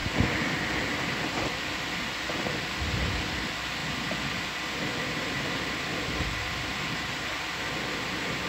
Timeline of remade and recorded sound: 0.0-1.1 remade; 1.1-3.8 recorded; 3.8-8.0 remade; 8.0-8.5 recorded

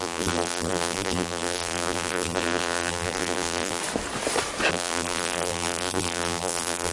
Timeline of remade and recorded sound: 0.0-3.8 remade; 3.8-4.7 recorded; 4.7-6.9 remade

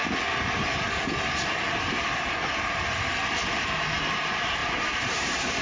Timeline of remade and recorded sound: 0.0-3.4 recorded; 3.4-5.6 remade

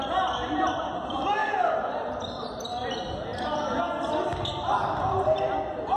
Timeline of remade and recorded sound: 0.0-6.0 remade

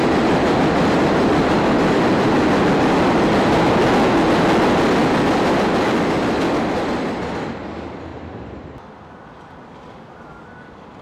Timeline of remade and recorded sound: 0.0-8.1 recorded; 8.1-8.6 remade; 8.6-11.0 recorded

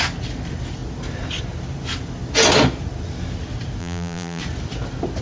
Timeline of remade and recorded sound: 0.0-3.8 recorded; 3.8-4.4 remade; 4.4-5.2 recorded